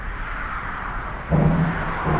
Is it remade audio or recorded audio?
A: recorded